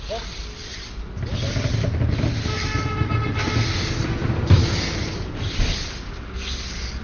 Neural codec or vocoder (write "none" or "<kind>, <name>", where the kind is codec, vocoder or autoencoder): none